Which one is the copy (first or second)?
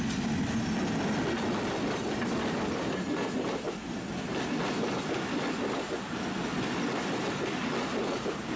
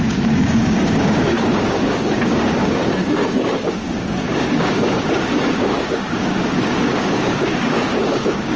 second